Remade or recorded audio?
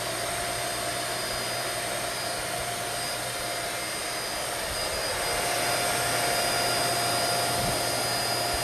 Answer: recorded